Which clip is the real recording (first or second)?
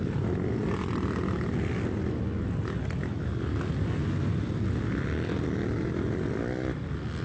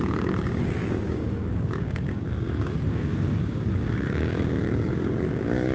first